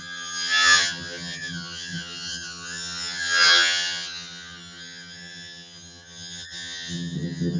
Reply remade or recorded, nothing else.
remade